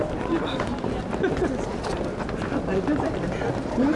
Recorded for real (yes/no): yes